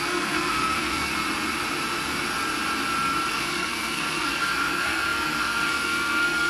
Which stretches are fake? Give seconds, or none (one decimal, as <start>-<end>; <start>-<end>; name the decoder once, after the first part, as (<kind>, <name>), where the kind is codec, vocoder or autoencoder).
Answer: 0.0-1.1 (codec, SNAC); 3.3-6.5